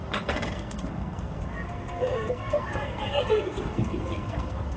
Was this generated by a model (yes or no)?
yes